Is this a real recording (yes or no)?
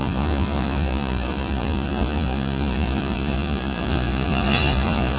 no